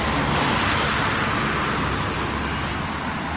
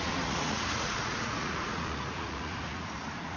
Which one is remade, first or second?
second